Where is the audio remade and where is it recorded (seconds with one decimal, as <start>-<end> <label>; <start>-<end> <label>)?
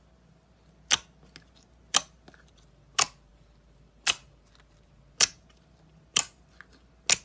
0.0-7.2 recorded